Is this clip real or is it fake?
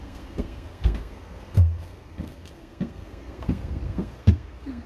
fake